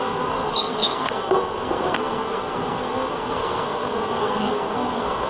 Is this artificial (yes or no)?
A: yes